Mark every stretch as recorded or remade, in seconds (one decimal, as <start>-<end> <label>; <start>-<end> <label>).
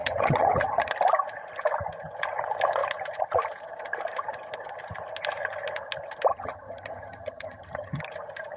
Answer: 0.0-0.9 remade; 0.9-6.3 recorded; 6.3-8.0 remade; 8.0-8.6 recorded